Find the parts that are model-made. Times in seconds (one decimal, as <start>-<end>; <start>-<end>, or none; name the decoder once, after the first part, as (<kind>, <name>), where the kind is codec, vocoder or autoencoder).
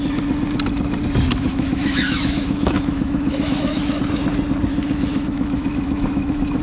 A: 1.5-4.0 (autoencoder, DAC-VAE); 4.7-6.6